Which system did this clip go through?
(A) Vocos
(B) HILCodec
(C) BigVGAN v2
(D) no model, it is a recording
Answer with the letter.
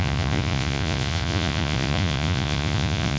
A